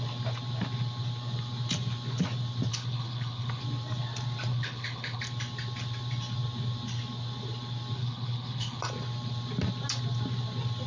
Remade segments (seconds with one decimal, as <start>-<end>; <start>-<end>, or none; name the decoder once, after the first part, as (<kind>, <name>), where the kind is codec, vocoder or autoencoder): 2.7-3.6 (codec, HILCodec); 4.5-5.2; 8.0-8.8